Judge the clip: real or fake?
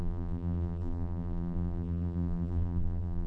fake